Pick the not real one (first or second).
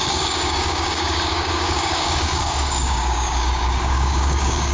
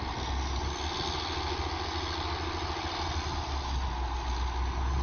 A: first